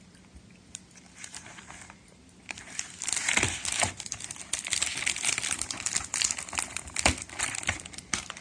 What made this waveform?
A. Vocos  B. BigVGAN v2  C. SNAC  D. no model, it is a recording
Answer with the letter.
D